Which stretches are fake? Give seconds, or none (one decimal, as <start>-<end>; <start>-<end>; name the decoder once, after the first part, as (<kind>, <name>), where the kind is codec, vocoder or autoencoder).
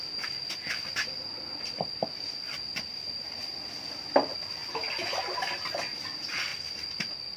2.7-3.7 (vocoder, BigVGAN v2); 6.5-7.4